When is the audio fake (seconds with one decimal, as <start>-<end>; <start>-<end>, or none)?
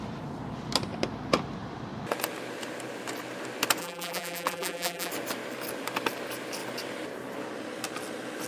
3.8-5.1